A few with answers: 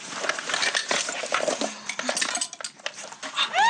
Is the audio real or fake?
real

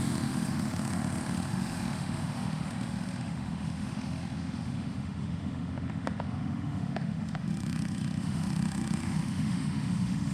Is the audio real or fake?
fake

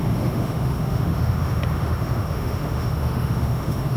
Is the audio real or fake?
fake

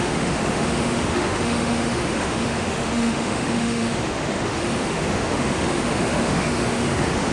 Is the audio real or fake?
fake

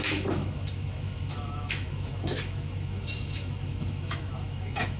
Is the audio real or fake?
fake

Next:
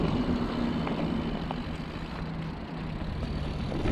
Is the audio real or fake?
real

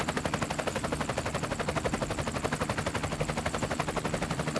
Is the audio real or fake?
real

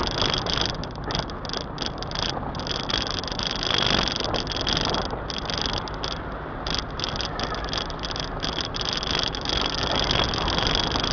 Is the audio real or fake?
real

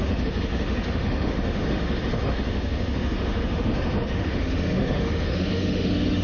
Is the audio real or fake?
fake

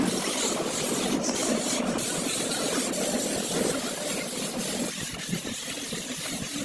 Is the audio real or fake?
real